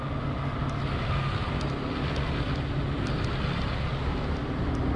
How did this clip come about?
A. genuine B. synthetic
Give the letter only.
A